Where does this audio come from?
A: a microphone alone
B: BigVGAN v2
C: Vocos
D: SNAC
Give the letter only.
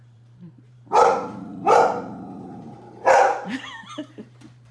B